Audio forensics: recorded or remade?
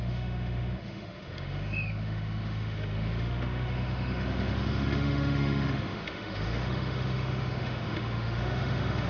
remade